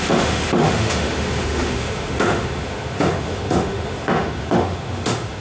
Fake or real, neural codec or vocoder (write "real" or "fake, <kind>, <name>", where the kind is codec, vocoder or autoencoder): fake, autoencoder, DAC-VAE